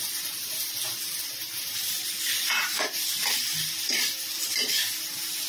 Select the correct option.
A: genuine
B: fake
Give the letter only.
A